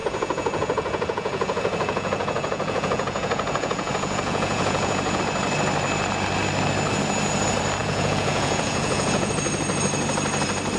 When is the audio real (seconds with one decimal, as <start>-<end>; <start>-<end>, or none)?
5.2-7.8; 9.3-10.8